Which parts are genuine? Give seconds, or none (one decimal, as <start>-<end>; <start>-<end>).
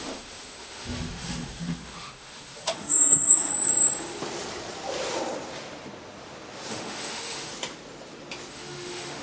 3.5-6.7; 7.5-8.5